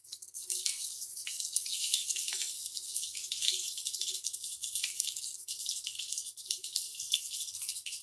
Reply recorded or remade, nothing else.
remade